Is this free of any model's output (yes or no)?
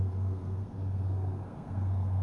no